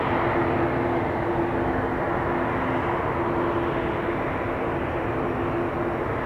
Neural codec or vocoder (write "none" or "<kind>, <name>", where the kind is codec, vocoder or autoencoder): none